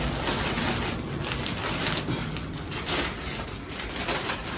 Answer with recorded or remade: recorded